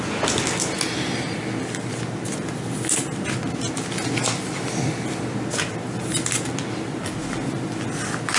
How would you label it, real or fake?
real